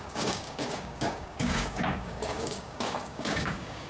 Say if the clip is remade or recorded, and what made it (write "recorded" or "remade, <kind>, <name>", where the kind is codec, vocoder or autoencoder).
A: remade, codec, DAC